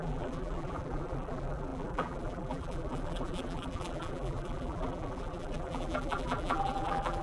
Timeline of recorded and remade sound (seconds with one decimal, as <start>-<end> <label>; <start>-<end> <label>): 0.0-7.2 remade